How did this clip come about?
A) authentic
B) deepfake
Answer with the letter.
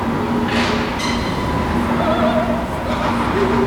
A